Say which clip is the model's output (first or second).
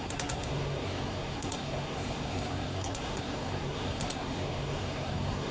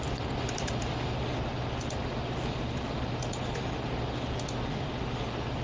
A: first